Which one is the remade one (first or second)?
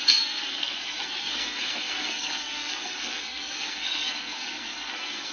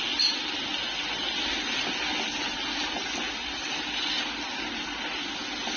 first